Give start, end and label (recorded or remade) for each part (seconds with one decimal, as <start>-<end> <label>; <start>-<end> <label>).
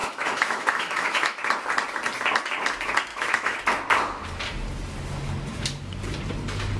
0.0-1.4 remade; 1.4-3.1 recorded; 3.1-3.6 remade; 3.6-6.8 recorded